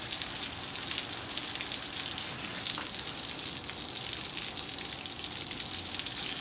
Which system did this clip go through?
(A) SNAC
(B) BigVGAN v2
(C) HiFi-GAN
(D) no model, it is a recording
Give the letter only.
D